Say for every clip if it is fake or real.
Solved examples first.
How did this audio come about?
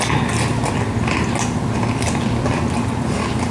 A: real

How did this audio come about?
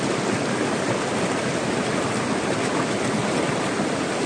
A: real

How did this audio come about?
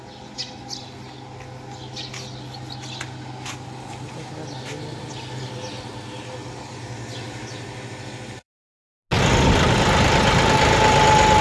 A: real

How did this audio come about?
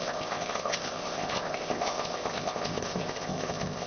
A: fake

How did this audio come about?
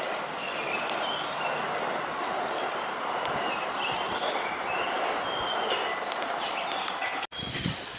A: real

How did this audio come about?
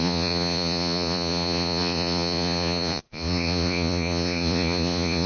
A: fake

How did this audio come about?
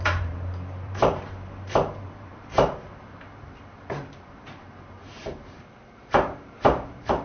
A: fake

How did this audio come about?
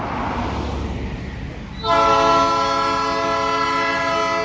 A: real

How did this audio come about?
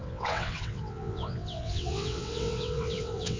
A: fake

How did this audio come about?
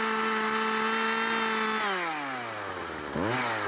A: real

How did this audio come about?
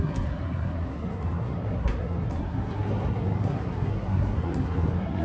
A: fake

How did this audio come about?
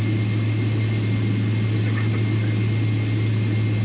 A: real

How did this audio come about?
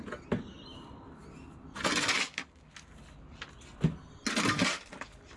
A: real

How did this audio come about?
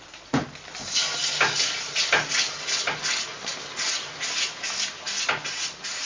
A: real